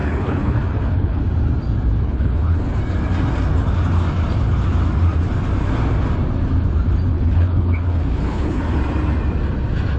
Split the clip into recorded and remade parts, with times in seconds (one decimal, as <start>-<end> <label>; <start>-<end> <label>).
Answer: 0.0-1.2 remade; 1.2-2.0 recorded; 2.0-2.8 remade; 2.8-7.1 recorded; 7.1-8.6 remade; 8.6-10.0 recorded